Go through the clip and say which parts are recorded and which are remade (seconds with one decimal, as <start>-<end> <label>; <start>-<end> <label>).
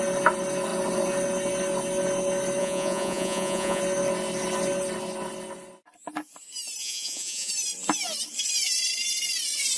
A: 0.0-2.6 recorded; 2.6-3.8 remade; 3.8-6.8 recorded; 6.8-7.5 remade; 7.5-9.8 recorded